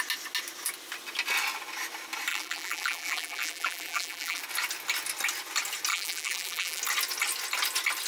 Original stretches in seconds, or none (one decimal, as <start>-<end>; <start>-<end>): 0.0-2.3; 4.4-5.9; 6.8-8.1